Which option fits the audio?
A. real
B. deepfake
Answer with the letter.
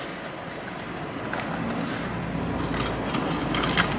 A